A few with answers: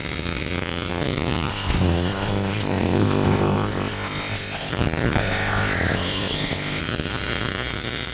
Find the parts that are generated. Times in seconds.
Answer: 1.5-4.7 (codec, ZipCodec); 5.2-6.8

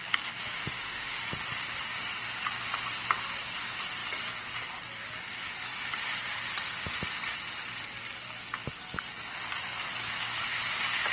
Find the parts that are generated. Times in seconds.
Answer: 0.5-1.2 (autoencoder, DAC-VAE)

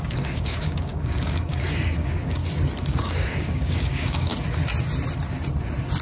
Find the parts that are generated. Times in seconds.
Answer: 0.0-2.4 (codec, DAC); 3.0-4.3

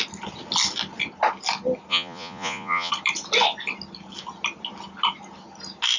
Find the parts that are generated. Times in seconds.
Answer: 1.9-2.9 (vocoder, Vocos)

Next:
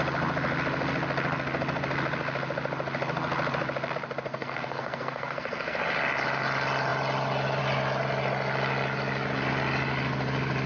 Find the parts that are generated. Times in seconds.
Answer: 4.3-5.8 (codec, SNAC)

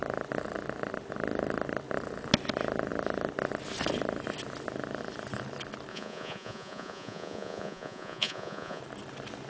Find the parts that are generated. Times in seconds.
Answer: 5.9-8.8 (vocoder, Vocos)

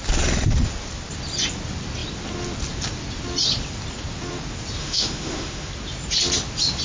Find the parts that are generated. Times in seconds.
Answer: 4.8-5.7 (autoencoder, DAC-VAE)